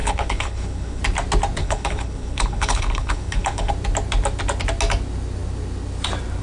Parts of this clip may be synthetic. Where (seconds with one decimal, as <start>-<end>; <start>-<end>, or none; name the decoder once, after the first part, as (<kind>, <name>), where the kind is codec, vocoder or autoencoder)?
0.0-1.0 (codec, HILCodec); 1.6-3.7